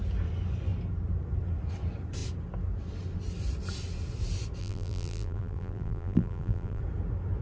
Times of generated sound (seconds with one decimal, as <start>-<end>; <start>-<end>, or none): 4.6-6.8